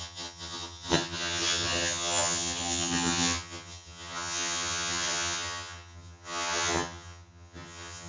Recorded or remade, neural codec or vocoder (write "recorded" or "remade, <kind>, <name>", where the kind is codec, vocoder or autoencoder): remade, vocoder, HiFi-GAN